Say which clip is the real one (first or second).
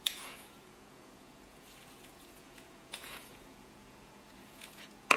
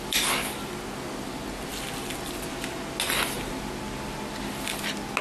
second